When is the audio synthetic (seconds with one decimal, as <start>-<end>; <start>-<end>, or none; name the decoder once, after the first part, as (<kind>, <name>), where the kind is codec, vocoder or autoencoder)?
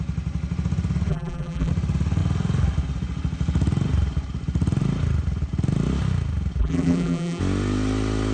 1.1-1.7 (vocoder, BigVGAN v2); 6.6-7.4